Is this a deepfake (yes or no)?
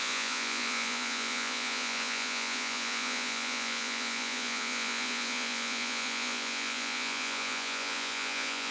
yes